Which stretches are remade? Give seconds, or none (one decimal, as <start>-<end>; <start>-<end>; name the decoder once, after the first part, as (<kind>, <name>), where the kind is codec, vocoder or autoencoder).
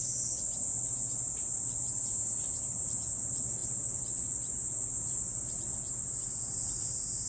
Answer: none